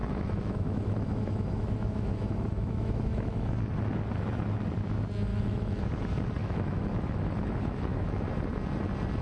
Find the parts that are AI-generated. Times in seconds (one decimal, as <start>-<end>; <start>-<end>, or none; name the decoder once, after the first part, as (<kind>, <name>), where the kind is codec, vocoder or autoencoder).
0.0-3.5 (autoencoder, DAC-VAE); 5.3-5.8; 6.4-8.2